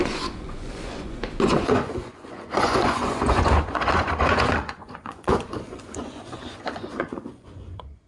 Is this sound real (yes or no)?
no